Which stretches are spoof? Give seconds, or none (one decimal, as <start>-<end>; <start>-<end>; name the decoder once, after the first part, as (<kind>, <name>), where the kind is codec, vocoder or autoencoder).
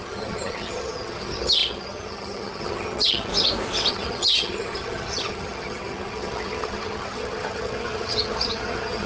0.0-3.3 (vocoder, HiFi-GAN); 3.9-9.1